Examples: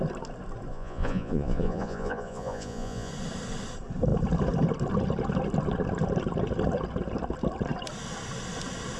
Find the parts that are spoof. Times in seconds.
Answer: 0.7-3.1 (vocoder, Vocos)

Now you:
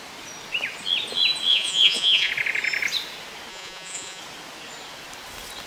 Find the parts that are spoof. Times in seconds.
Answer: 1.5-2.3 (vocoder, Vocos); 3.5-4.2

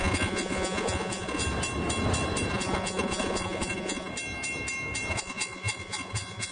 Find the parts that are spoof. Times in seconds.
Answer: 0.0-1.4 (vocoder, Vocos); 2.5-4.1; 5.1-6.5

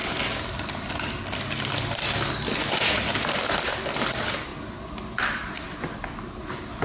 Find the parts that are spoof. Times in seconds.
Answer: none

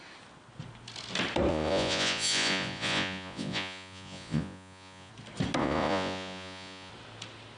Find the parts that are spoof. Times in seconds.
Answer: 1.5-5.1 (vocoder, Vocos); 5.6-6.9

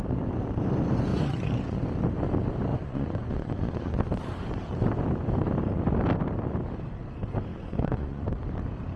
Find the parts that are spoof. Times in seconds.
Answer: 1.1-1.8 (vocoder, Vocos); 2.7-4.0; 7.5-8.4